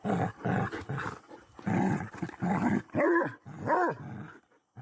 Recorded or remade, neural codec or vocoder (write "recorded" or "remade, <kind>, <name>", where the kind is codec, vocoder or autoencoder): recorded